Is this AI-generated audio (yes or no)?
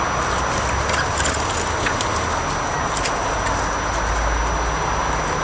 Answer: no